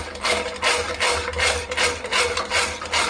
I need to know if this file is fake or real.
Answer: real